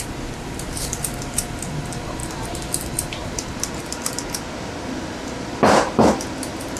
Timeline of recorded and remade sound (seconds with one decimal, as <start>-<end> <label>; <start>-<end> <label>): 0.0-6.8 recorded

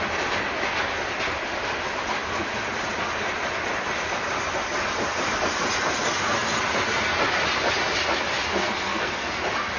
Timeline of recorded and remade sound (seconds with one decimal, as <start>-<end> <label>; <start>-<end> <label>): 0.0-8.6 recorded; 8.6-9.4 remade; 9.4-9.8 recorded